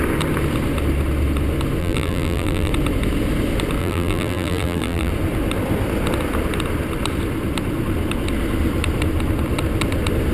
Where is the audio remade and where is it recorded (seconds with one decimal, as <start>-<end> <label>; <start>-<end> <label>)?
0.0-1.8 recorded; 1.8-2.7 remade; 2.7-3.8 recorded; 3.8-5.1 remade; 5.1-10.3 recorded